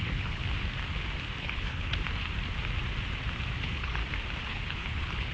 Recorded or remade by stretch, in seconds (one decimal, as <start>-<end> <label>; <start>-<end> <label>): 0.0-0.4 remade; 0.4-1.4 recorded; 1.4-1.9 remade; 1.9-3.6 recorded; 3.6-4.0 remade; 4.0-4.5 recorded; 4.5-5.3 remade